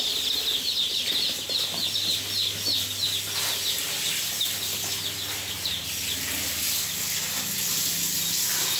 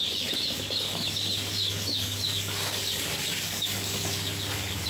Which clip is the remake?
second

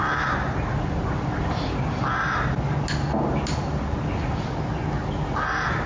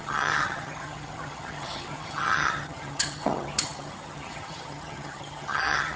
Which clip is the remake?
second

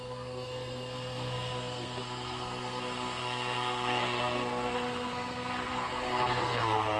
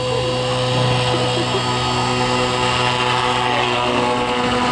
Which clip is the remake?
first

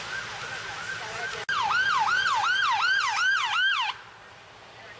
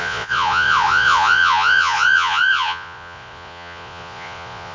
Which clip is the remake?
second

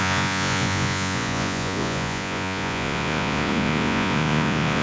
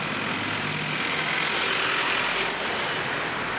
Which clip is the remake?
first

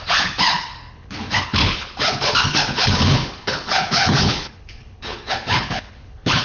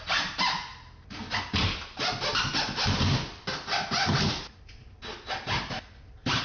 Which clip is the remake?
first